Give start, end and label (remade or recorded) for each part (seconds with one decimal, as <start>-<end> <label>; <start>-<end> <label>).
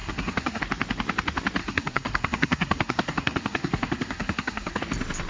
0.0-0.6 remade; 0.6-1.6 recorded; 1.6-4.8 remade; 4.8-5.3 recorded